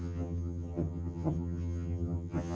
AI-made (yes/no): yes